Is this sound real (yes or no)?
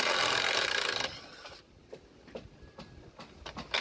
yes